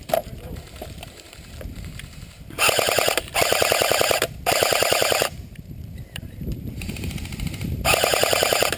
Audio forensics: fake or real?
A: fake